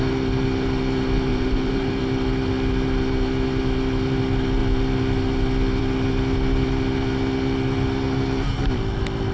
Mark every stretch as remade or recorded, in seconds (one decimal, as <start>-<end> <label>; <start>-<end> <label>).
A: 0.0-1.3 recorded; 1.3-2.0 remade; 2.0-9.3 recorded